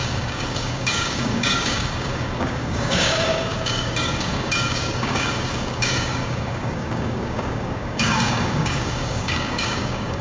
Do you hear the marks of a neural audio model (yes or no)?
yes